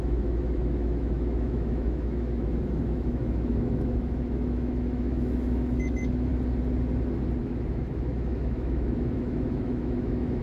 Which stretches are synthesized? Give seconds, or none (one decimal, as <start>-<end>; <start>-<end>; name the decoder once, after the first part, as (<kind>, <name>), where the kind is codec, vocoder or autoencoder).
0.0-6.3 (autoencoder, DAC-VAE); 7.4-10.4

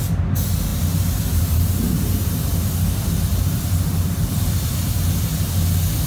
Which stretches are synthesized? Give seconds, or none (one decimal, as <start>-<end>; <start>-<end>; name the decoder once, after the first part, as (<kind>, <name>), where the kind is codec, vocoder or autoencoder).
0.7-2.3 (vocoder, BigVGAN v2)

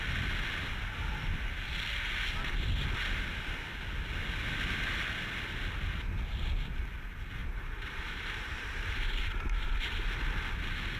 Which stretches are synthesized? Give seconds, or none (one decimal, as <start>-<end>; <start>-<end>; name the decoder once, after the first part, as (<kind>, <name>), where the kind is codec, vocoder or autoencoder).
7.4-9.7 (vocoder, BigVGAN v2)